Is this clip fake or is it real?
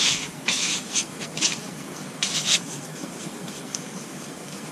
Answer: fake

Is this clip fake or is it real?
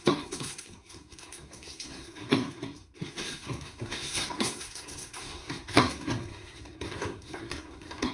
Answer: fake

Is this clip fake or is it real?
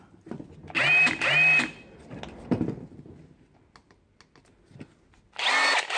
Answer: real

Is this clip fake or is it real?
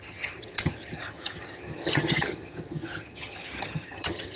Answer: fake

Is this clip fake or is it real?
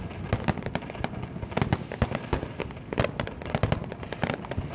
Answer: real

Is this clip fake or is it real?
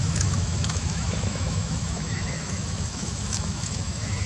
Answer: fake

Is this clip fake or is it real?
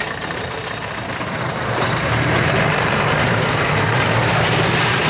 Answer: fake